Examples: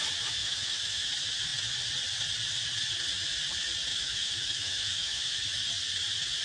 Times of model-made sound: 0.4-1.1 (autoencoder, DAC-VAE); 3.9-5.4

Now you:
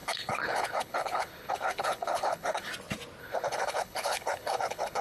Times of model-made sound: 0.0-2.7 (codec, HILCodec); 3.2-5.0

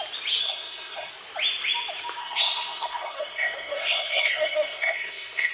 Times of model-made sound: 0.4-1.1 (codec, SNAC); 2.2-5.5